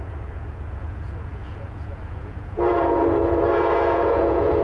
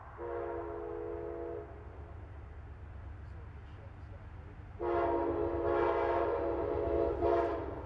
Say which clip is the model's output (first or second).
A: first